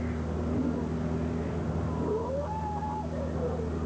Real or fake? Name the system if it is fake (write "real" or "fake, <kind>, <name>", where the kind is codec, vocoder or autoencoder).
real